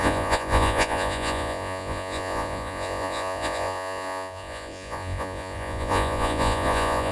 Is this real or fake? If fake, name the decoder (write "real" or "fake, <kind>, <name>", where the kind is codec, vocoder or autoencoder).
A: fake, vocoder, Vocos